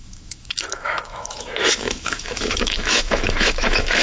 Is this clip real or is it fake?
fake